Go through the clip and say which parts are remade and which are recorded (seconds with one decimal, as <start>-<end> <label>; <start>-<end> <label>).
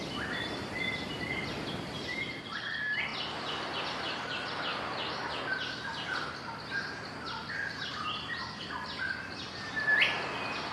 0.0-4.7 remade; 4.7-6.3 recorded; 6.3-10.7 remade